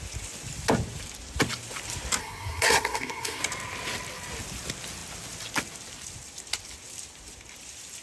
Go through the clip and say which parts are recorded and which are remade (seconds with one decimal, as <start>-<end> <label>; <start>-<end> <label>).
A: 0.0-2.2 recorded; 2.2-3.4 remade; 3.4-8.0 recorded